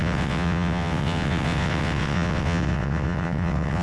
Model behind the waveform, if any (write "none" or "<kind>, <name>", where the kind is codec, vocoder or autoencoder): vocoder, WaveNeXt